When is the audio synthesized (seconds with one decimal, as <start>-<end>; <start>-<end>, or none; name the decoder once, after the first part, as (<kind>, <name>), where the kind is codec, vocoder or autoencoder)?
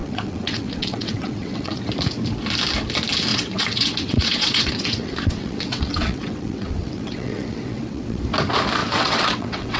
0.0-1.8 (vocoder, WaveNeXt); 3.3-8.2; 8.8-9.8